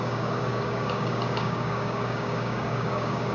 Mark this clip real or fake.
fake